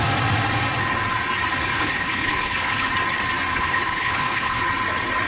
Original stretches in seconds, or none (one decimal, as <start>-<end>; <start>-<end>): 0.0-1.5; 2.9-3.5; 4.6-5.3